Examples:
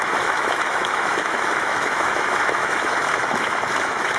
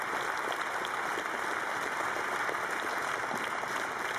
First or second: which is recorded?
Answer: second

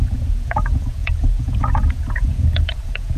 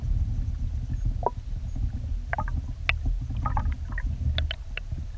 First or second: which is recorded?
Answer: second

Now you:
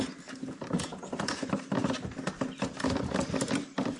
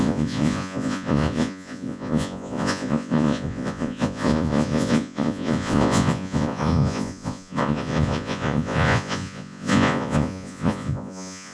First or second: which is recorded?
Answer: first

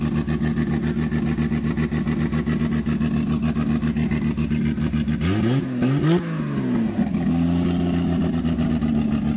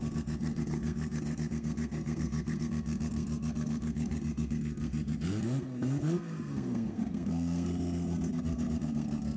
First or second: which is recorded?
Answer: first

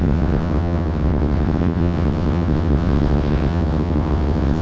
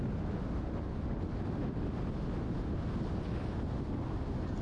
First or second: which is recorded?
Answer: second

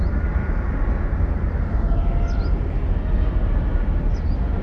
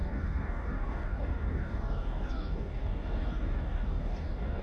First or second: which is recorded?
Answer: first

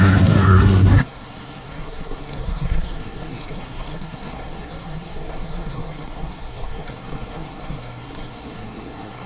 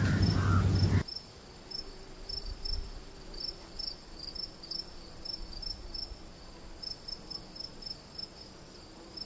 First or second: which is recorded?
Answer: second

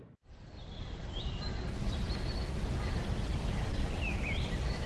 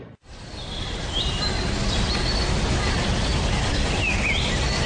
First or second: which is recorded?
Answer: second